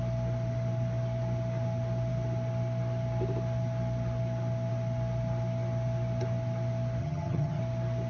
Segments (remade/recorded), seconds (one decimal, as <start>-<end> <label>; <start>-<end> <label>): 0.0-7.0 recorded; 7.0-7.6 remade; 7.6-8.1 recorded